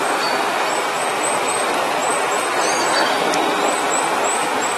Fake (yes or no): no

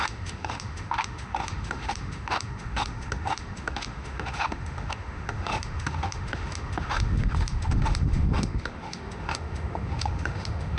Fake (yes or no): yes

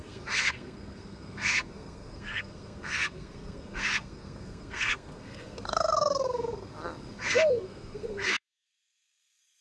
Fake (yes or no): yes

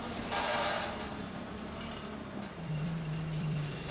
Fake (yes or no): yes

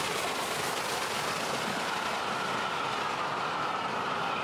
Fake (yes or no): no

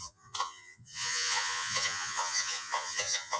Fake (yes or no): yes